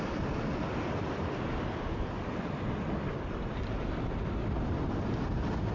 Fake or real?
real